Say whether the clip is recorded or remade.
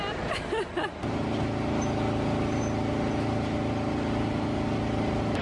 recorded